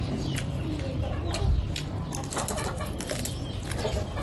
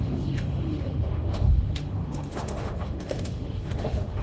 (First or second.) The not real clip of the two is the second